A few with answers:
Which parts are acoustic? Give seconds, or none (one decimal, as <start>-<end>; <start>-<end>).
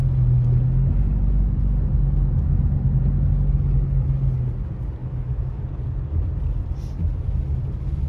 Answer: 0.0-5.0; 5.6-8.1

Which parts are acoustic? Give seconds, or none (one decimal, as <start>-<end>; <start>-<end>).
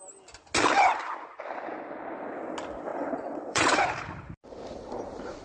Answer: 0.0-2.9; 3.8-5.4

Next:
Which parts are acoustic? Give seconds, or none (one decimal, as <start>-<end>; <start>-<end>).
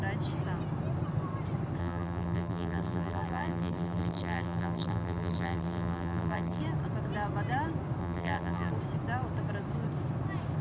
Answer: 0.0-1.8; 6.6-8.0; 8.7-10.6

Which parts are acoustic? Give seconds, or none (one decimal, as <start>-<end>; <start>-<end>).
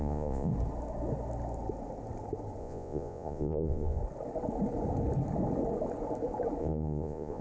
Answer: 0.5-2.6; 4.0-6.6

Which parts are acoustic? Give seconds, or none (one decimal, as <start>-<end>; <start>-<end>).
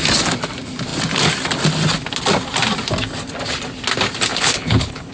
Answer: 0.0-4.3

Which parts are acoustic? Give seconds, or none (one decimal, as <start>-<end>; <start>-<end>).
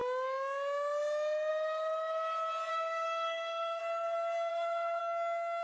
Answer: 0.0-2.7; 3.8-4.5; 5.0-5.6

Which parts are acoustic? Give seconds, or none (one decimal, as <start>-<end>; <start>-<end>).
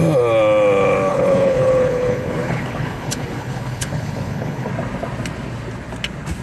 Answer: 0.0-1.1; 4.7-6.4